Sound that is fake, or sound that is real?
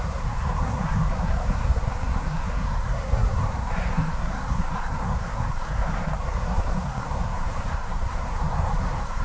fake